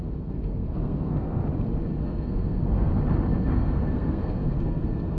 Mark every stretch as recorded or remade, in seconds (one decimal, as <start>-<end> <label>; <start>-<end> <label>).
0.0-1.4 remade; 1.4-2.0 recorded; 2.0-2.9 remade; 2.9-3.5 recorded; 3.5-5.2 remade